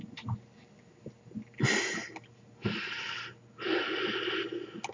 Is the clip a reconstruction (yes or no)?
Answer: no